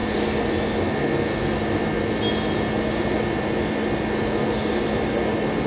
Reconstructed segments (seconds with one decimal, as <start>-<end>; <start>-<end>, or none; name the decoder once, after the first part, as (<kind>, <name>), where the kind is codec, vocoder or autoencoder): none